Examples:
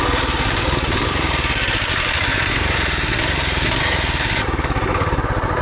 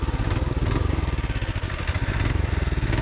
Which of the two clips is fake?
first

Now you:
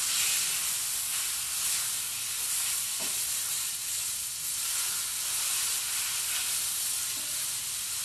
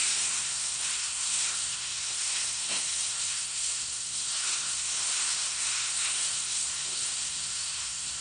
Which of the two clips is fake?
second